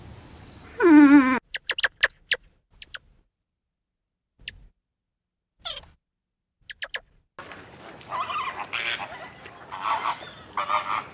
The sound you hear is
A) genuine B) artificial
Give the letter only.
A